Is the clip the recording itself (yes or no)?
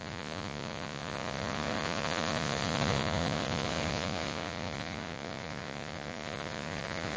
no